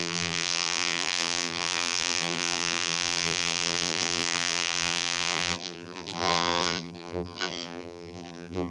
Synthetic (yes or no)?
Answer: yes